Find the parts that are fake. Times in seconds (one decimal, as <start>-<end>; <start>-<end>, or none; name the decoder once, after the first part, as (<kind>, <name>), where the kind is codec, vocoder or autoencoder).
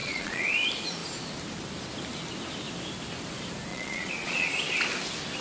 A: 0.0-0.5 (vocoder, Vocos); 3.7-4.5